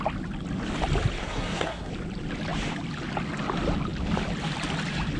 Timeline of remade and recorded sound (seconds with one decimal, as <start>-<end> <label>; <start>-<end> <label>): 0.0-1.2 recorded; 1.2-1.9 remade; 1.9-5.2 recorded